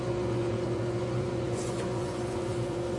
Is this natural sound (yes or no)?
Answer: no